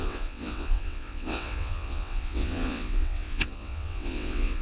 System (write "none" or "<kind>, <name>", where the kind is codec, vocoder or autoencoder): vocoder, WaveNeXt